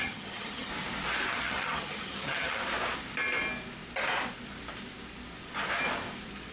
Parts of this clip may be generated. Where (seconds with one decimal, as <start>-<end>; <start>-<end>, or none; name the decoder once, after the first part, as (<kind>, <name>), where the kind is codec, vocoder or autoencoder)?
0.0-0.7 (vocoder, HiFi-GAN); 1.3-2.6